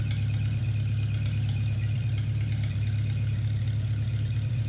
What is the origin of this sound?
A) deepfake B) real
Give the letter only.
B